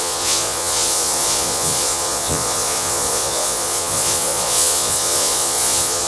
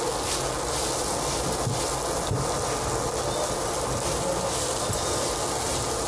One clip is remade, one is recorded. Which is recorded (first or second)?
second